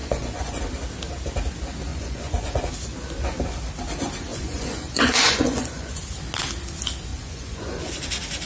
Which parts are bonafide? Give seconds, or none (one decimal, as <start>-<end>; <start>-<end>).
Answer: 0.6-1.9; 2.7-4.3; 6.0-7.1; 7.9-8.5